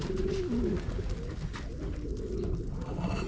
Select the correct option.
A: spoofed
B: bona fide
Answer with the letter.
B